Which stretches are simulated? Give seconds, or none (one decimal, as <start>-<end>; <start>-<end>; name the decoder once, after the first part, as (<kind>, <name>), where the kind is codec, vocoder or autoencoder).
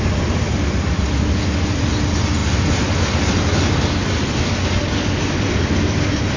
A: none